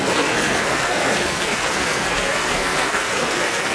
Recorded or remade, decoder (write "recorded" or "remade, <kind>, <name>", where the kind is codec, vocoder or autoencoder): remade, codec, SNAC